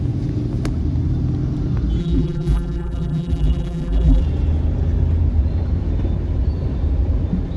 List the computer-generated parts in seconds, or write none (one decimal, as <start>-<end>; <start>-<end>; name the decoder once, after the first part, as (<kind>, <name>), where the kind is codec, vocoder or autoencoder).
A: 2.0-4.2 (vocoder, BigVGAN v2)